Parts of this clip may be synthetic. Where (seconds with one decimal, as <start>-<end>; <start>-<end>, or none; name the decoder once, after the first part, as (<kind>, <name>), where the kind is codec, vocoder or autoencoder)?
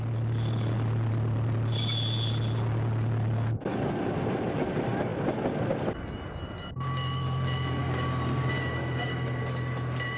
7.8-9.4 (codec, DAC)